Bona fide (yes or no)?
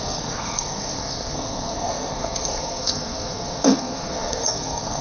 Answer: no